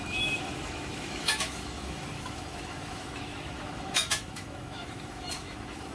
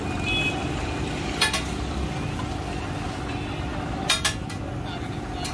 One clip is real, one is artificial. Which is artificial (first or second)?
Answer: first